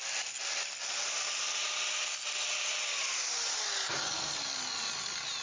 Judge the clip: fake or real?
real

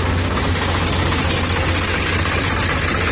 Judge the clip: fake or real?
real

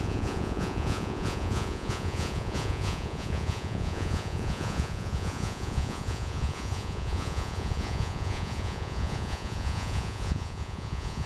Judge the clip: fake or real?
fake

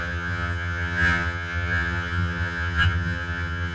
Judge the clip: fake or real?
fake